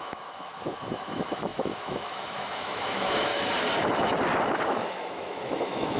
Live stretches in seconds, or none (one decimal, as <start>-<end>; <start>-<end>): 3.3-4.6